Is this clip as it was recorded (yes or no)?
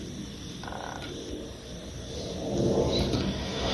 yes